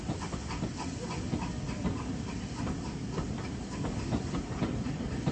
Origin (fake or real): real